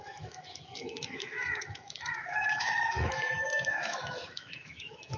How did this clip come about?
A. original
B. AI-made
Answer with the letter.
B